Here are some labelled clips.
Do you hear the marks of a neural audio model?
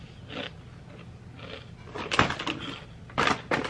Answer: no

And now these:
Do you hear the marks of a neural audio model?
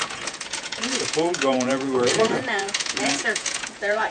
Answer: yes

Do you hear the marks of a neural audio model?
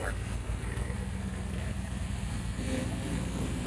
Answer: yes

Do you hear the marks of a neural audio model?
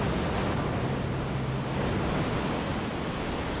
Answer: no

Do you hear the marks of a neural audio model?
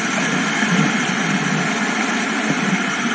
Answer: no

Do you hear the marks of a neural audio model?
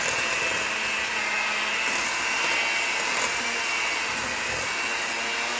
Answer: no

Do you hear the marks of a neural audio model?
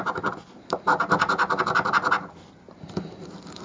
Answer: no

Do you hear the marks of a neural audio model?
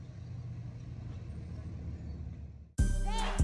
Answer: no